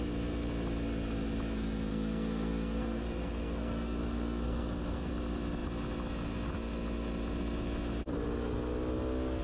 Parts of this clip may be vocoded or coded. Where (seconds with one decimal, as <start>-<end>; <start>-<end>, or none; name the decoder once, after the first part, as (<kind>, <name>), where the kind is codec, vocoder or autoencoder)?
1.9-5.1 (codec, SNAC)